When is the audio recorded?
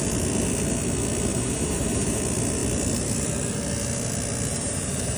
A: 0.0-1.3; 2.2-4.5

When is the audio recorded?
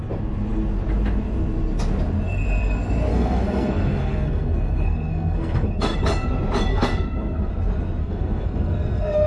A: 0.0-3.1; 6.0-6.7; 7.5-8.0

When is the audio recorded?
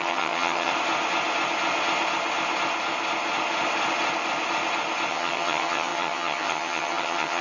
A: 0.7-5.1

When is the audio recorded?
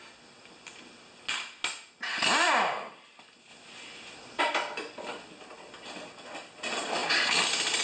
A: 0.0-7.8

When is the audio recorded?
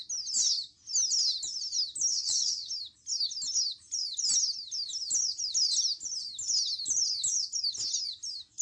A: 0.0-2.1; 2.7-8.6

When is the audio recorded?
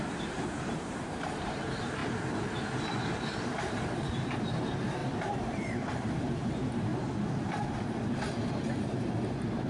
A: 2.0-3.7; 6.9-8.8